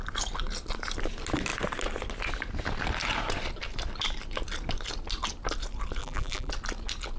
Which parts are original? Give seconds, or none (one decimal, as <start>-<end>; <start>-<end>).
0.0-6.0; 6.5-7.2